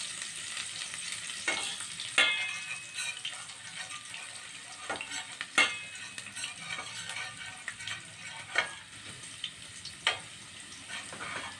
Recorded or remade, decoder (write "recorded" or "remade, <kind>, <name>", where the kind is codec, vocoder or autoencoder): recorded